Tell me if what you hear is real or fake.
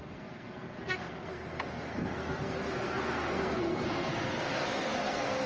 fake